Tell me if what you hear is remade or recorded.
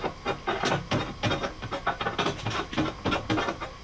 recorded